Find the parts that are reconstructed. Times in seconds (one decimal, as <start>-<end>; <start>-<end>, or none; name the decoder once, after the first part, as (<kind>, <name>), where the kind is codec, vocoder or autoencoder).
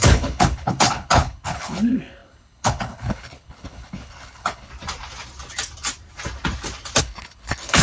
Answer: 0.0-4.7 (codec, HILCodec); 7.0-7.8